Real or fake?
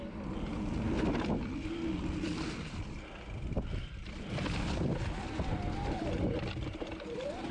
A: real